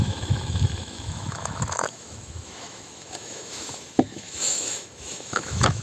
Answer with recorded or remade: remade